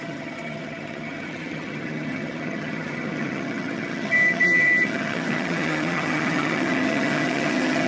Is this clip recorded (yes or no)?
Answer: no